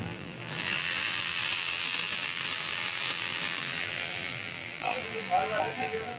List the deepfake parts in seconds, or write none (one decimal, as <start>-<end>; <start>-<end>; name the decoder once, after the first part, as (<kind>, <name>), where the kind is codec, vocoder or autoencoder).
0.0-6.2 (vocoder, BigVGAN v2)